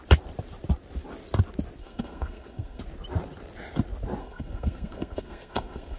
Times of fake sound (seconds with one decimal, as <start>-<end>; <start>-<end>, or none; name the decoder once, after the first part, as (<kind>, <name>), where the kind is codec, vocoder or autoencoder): 1.8-2.8 (codec, SNAC); 4.2-6.0